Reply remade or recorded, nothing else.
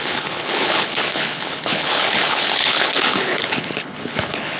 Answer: remade